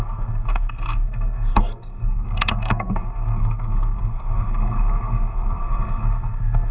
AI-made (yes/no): yes